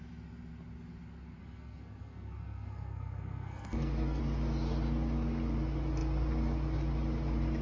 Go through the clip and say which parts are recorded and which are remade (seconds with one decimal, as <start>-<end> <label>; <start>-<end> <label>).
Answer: 0.0-1.4 recorded; 1.4-4.2 remade; 4.2-7.6 recorded